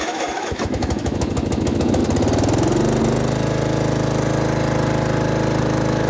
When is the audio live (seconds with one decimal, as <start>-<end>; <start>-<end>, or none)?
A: 2.0-5.6